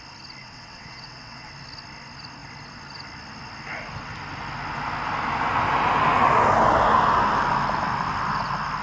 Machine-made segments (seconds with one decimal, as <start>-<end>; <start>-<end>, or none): 0.4-1.5